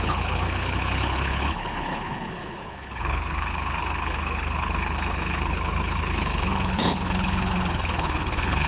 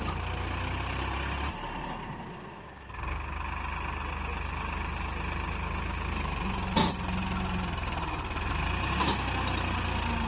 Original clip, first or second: second